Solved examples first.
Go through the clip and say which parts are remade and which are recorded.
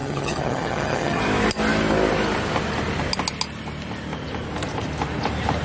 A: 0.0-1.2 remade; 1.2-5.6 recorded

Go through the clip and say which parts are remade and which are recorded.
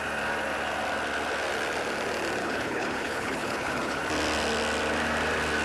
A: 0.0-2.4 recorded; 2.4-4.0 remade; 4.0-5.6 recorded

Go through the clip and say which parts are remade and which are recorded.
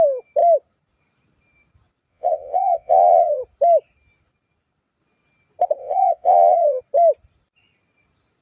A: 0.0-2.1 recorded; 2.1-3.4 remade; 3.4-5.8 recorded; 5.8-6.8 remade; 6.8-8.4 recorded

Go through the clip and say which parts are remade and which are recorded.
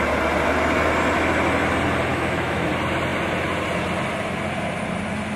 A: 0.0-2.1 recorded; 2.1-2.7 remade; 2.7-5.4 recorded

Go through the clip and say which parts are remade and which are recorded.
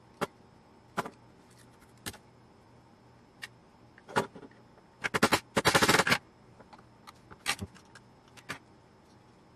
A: 0.0-3.6 recorded; 3.6-4.4 remade; 4.4-9.6 recorded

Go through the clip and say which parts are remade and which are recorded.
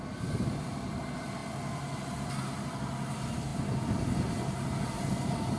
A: 0.0-5.6 recorded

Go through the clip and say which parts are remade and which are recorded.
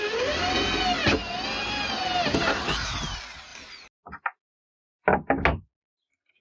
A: 0.0-6.4 recorded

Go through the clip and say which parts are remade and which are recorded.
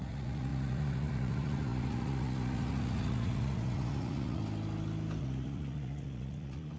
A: 0.0-4.4 remade; 4.4-5.2 recorded; 5.2-6.8 remade